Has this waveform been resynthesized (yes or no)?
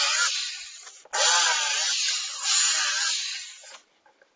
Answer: no